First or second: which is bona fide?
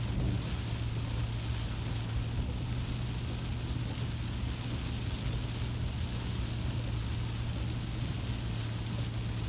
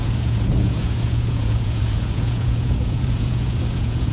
first